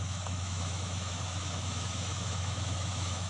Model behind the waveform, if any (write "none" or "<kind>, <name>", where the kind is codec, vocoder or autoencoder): autoencoder, DAC-VAE